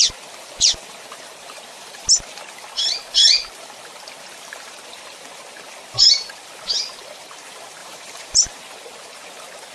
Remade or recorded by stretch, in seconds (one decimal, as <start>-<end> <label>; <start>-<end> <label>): 0.0-7.8 recorded; 7.8-8.6 remade; 8.6-9.7 recorded